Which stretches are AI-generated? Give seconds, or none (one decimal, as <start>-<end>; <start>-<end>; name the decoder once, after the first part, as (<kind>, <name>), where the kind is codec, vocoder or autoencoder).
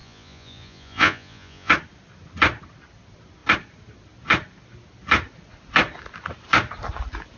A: 0.0-1.7 (vocoder, Vocos)